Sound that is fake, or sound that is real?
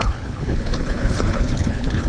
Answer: fake